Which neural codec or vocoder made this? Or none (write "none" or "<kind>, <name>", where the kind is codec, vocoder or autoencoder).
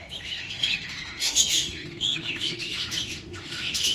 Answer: autoencoder, DAC-VAE